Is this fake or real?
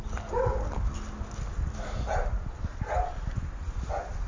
real